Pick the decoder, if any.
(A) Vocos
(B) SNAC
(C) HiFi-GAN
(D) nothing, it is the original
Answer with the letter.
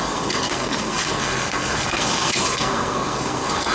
B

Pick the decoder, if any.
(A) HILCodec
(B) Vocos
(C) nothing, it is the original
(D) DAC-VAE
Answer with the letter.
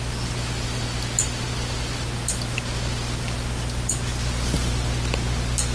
C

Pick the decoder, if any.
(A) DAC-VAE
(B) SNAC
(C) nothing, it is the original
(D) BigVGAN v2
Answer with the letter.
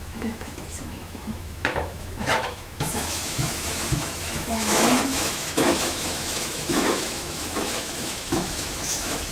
A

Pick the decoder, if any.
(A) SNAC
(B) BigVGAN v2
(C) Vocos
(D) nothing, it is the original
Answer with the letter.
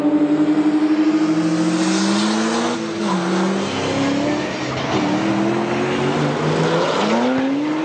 D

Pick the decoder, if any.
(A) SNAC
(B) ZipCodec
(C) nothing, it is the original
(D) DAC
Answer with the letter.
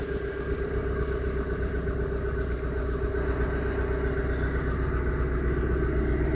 C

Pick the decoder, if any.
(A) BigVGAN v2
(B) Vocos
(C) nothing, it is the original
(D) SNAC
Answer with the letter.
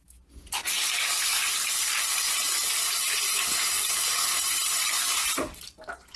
C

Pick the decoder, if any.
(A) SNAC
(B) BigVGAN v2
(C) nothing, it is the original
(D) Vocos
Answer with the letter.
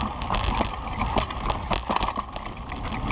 C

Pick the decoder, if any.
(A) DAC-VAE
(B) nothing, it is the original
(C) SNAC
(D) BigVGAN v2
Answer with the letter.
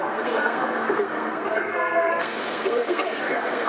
C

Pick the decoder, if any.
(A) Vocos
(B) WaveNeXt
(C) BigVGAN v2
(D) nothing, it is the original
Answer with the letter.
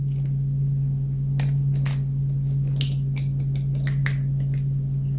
D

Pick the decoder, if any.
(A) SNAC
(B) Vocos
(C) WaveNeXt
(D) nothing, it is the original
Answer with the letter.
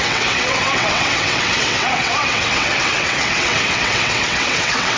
C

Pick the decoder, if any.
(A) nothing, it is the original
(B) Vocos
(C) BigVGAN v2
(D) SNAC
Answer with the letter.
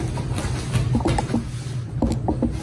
A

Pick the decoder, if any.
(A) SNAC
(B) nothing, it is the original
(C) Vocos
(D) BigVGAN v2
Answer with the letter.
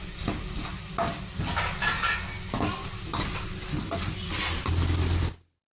B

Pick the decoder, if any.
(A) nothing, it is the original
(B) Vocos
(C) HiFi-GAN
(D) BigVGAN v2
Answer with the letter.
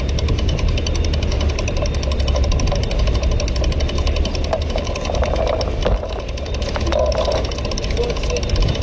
A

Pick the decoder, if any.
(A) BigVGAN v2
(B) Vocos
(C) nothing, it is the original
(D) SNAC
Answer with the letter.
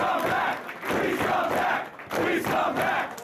C